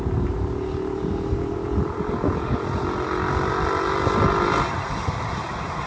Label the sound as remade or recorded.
recorded